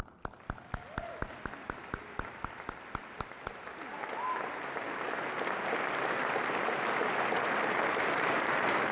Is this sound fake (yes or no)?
no